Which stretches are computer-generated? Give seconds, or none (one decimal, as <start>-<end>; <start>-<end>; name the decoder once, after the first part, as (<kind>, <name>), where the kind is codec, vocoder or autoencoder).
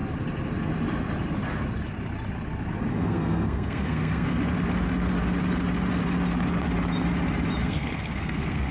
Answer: 2.9-4.4 (codec, SNAC); 7.6-8.7